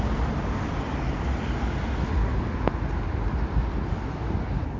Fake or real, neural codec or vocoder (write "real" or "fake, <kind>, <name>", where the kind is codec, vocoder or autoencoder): real